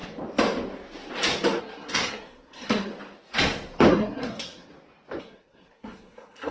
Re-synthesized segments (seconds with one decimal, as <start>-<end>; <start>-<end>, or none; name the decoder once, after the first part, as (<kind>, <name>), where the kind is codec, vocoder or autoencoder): 1.6-2.9 (codec, SNAC); 3.9-4.7; 5.2-6.5